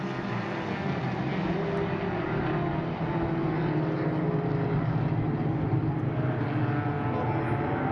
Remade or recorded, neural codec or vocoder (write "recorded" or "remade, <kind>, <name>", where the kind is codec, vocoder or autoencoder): recorded